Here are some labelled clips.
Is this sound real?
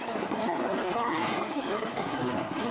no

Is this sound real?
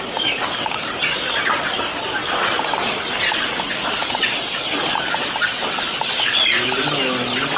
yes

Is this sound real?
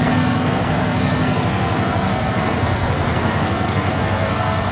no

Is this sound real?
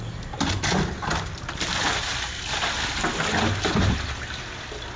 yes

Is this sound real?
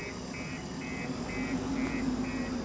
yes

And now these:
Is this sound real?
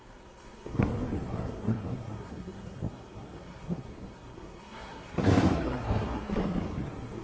no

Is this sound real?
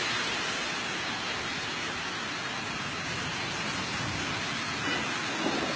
yes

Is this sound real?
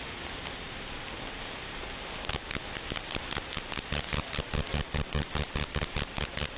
yes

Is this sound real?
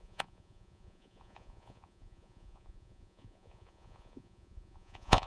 no